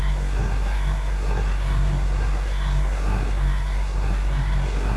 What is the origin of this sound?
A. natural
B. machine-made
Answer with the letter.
B